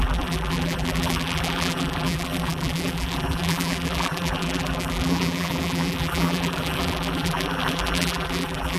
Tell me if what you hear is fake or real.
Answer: fake